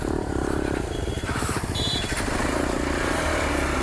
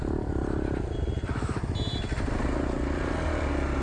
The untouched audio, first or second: second